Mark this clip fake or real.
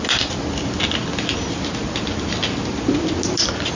real